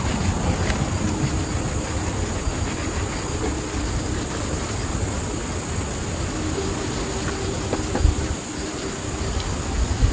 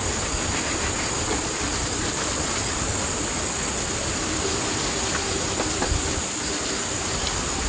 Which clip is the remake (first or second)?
second